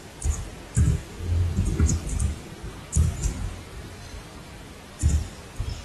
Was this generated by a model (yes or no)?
no